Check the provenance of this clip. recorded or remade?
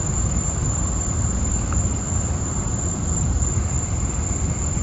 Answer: remade